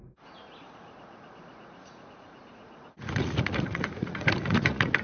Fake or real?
fake